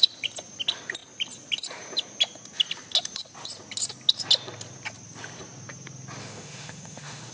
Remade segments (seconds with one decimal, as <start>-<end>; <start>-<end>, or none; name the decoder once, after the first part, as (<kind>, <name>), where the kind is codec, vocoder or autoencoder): 6.2-7.3 (autoencoder, DAC-VAE)